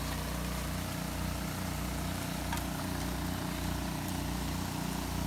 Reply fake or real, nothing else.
real